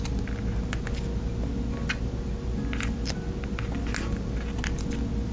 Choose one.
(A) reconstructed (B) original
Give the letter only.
B